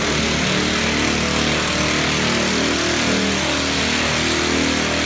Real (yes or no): yes